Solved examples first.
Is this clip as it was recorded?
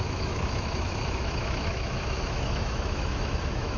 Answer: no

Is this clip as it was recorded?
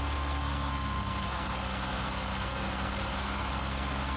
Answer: no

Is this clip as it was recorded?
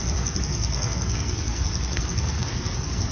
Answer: no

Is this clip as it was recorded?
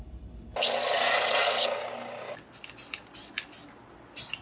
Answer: yes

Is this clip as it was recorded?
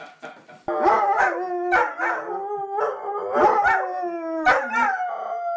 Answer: yes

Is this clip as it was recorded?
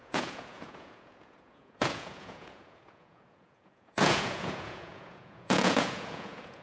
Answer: no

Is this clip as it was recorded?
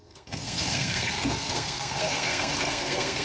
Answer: no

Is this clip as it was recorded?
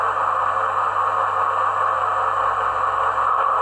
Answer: yes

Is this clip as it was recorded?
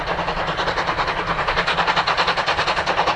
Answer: yes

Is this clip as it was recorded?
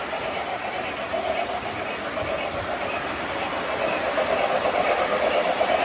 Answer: yes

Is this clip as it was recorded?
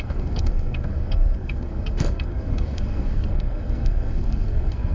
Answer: no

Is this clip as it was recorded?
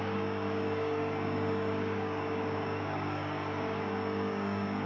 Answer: no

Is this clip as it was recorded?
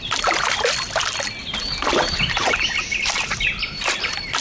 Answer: yes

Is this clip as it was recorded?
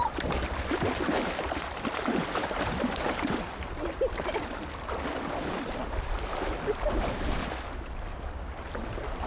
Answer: yes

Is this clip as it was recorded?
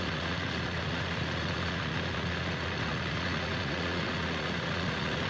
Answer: no